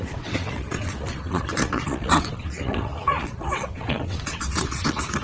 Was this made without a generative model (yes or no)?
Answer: no